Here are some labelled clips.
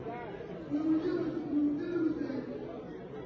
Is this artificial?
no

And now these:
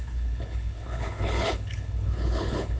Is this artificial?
yes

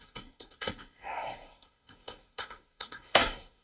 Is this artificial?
yes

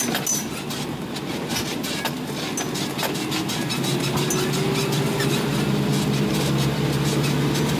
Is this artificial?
no